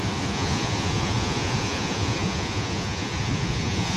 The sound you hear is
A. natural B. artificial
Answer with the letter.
B